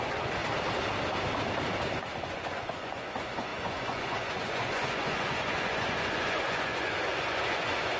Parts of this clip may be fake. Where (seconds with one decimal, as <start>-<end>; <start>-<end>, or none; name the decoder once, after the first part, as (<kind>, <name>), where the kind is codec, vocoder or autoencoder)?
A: 0.0-0.4 (vocoder, Vocos); 2.2-8.0